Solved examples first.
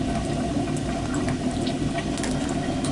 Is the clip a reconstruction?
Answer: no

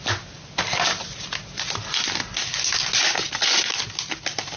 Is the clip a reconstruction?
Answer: no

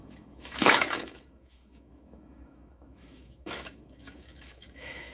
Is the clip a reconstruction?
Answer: yes